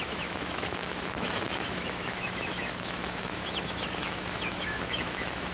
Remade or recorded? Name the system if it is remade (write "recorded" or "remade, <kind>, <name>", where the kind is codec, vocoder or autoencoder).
remade, autoencoder, DAC-VAE